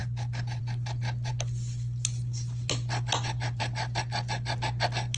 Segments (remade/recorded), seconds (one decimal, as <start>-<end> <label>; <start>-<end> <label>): 0.0-5.2 recorded

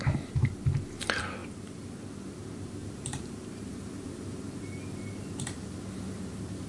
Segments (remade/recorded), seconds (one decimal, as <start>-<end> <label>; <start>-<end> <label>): 0.0-1.4 recorded; 1.4-1.9 remade; 1.9-2.8 recorded; 2.8-5.6 remade; 5.6-6.7 recorded

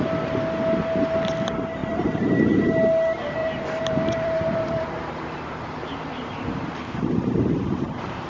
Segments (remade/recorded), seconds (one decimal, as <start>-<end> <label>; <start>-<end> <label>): 0.0-1.8 recorded; 1.8-2.7 remade; 2.7-3.4 recorded; 3.4-8.3 remade

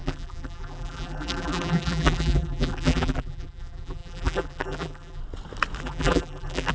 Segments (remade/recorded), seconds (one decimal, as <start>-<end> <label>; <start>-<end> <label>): 0.0-5.2 remade; 5.2-5.8 recorded; 5.8-6.7 remade

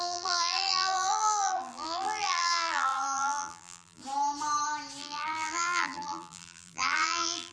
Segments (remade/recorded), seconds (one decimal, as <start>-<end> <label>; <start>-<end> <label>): 0.0-4.0 remade; 4.0-5.0 recorded; 5.0-7.5 remade